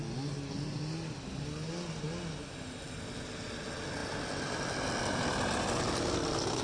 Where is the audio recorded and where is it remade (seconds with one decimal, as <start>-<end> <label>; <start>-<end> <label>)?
0.0-6.6 recorded